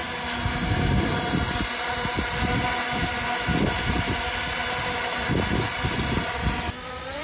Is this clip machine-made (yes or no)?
no